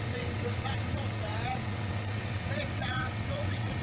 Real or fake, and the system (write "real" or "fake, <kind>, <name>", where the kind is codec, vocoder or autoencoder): fake, vocoder, WaveNeXt